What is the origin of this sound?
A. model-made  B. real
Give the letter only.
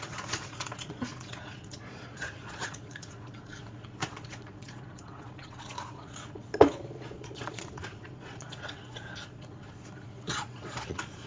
A